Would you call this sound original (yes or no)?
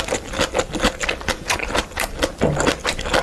no